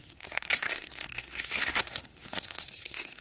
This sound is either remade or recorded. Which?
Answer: remade